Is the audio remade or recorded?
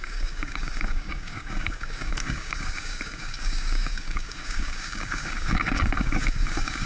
remade